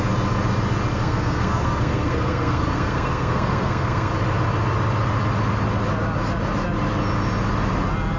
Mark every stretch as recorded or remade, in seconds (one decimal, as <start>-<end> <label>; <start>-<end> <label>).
0.0-0.9 recorded; 0.9-4.1 remade; 4.1-8.2 recorded

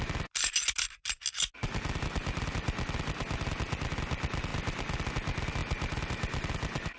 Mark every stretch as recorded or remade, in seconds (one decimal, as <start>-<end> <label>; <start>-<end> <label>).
0.0-1.6 recorded; 1.6-3.8 remade; 3.8-4.5 recorded; 4.5-5.1 remade; 5.1-5.6 recorded; 5.6-7.0 remade

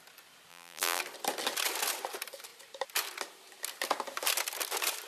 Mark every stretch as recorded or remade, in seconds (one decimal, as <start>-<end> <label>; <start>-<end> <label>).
0.0-0.5 recorded; 0.5-1.0 remade; 1.0-5.1 recorded